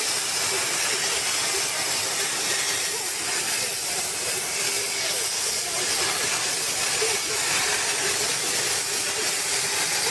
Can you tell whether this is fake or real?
real